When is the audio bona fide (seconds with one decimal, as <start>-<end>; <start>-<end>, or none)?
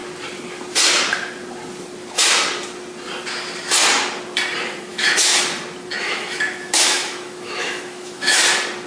0.0-4.9; 5.4-6.0; 8.4-8.9